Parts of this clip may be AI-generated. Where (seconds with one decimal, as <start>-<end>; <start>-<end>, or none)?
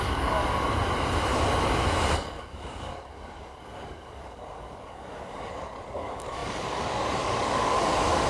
0.0-0.4; 2.1-8.3